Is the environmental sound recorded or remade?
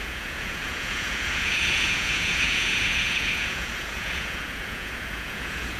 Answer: remade